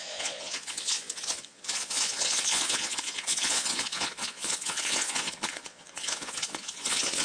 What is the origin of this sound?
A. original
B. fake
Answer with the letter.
B